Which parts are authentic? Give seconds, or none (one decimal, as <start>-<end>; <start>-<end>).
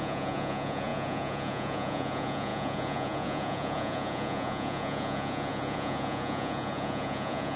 none